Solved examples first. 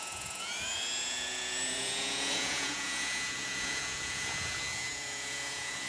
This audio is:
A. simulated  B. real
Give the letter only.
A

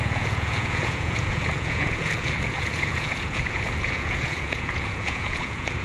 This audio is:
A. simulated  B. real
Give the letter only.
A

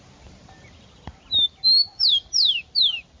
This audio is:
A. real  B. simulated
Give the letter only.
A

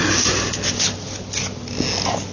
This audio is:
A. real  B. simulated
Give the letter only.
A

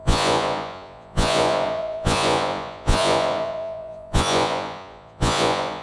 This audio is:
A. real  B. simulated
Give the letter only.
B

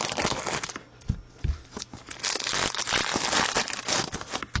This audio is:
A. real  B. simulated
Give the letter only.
A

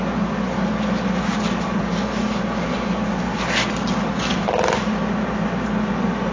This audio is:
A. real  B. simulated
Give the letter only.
A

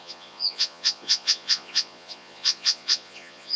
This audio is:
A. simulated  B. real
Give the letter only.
A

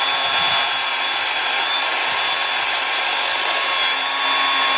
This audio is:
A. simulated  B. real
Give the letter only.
B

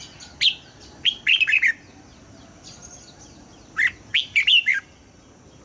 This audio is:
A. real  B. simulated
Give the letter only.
A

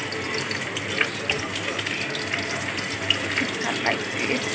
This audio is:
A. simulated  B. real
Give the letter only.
B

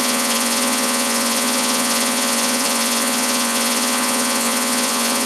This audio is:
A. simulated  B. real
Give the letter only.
A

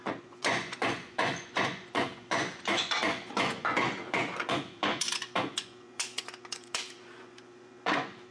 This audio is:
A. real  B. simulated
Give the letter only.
B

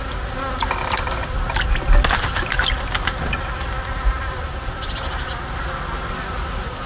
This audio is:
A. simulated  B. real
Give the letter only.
B